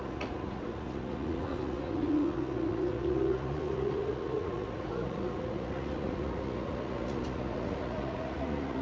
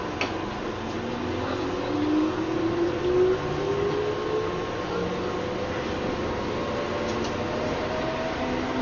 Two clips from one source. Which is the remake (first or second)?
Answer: first